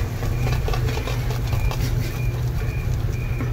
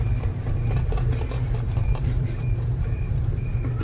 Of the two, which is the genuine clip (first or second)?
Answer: first